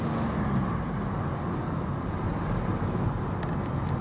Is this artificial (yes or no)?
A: no